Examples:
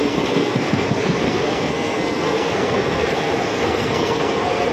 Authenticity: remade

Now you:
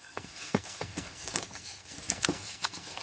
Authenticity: remade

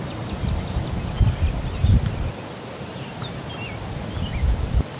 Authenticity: recorded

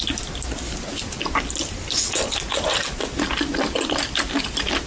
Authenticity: recorded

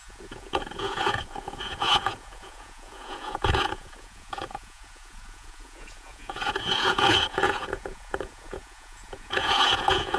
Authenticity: remade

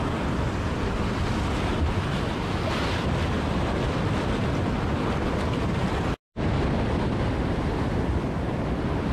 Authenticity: recorded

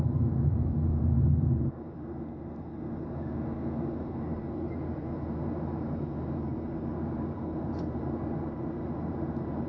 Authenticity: remade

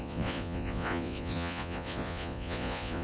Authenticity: remade